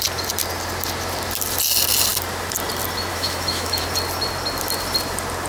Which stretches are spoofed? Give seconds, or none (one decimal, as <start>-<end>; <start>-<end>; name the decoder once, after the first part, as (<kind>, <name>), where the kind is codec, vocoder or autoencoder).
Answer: 3.1-3.8 (autoencoder, DAC-VAE)